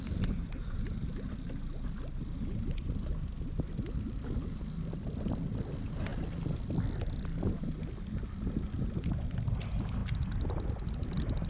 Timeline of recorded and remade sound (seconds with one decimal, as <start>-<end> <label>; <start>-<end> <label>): 0.0-11.5 recorded